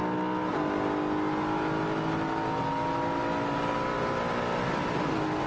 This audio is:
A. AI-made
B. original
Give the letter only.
B